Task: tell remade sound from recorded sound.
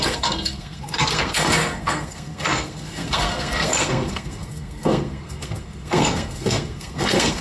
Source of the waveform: remade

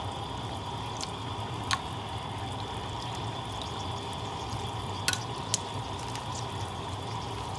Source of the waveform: recorded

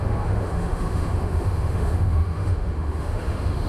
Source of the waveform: remade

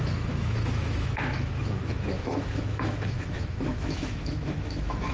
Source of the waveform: remade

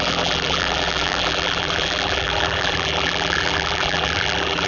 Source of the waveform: remade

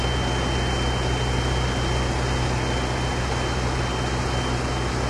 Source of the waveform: recorded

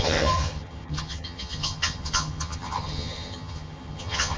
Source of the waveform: remade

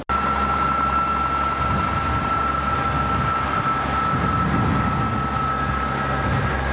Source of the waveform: recorded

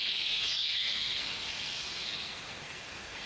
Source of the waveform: remade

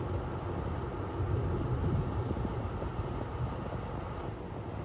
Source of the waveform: recorded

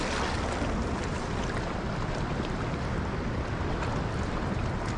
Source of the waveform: recorded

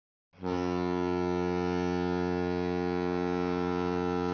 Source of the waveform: recorded